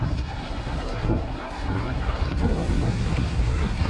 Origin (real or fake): fake